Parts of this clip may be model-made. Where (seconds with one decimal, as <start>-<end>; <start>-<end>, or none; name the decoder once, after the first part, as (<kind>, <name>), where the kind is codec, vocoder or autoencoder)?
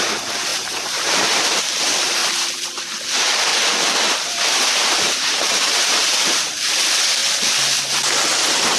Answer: 0.5-1.6 (vocoder, BigVGAN v2); 2.2-2.9; 3.5-6.7